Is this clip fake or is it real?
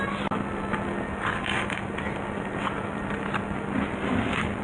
real